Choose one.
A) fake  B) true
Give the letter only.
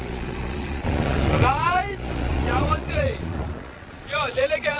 A